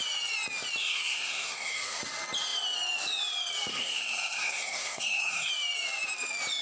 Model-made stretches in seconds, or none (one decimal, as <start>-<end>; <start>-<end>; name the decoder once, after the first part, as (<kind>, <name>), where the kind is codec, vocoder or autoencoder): 0.8-2.0 (codec, SNAC); 3.7-5.5